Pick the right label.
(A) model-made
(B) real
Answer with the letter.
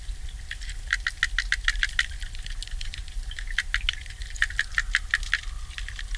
B